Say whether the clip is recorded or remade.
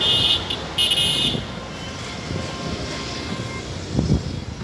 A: recorded